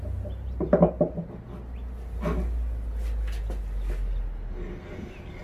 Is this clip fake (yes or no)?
no